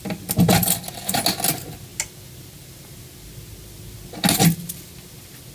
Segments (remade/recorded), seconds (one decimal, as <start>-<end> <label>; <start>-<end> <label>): 0.0-5.5 recorded